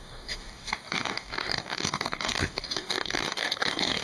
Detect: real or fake fake